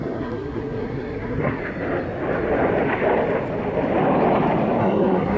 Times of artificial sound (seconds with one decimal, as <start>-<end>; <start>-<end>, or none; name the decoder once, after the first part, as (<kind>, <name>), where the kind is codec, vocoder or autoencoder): 0.0-1.6 (codec, SNAC); 4.8-5.4